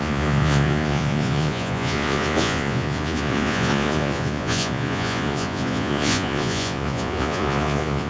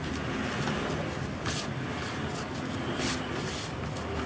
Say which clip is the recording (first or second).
second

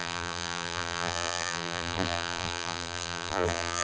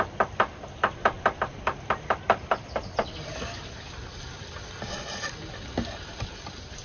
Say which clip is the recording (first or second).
second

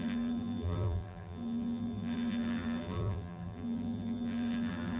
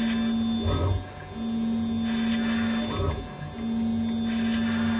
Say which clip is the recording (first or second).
second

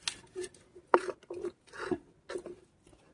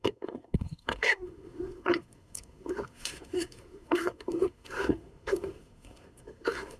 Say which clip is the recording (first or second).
first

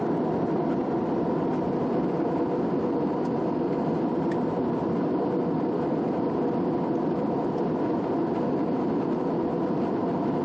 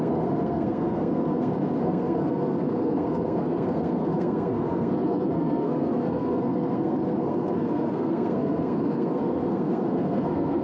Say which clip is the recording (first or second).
first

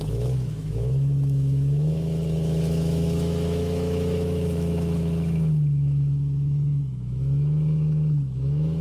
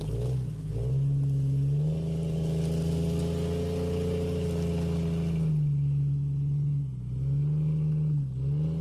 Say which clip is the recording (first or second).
second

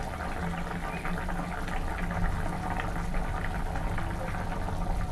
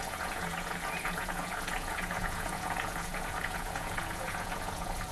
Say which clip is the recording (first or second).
first